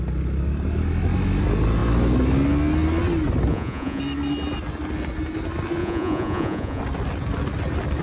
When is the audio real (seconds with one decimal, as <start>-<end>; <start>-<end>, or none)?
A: 0.0-3.5; 4.0-5.8; 6.8-8.0